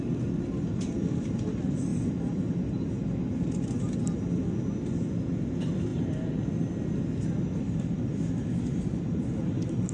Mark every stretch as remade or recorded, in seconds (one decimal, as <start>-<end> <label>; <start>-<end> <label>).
0.0-1.9 recorded; 1.9-2.4 remade; 2.4-9.9 recorded